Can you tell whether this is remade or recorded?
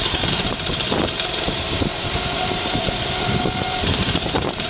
remade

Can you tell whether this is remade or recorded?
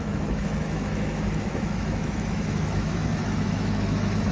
remade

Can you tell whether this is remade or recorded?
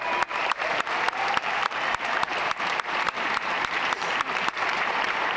remade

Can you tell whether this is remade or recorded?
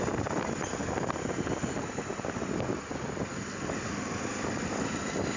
recorded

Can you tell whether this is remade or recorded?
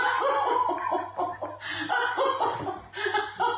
recorded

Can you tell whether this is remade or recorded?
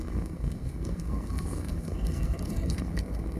remade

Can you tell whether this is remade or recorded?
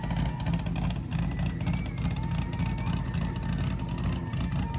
recorded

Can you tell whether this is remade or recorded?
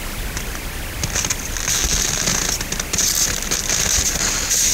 recorded